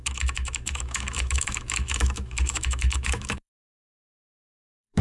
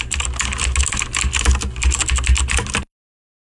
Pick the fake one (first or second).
first